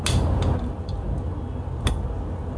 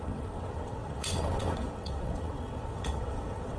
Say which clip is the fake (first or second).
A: second